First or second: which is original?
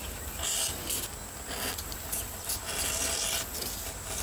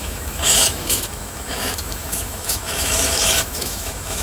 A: first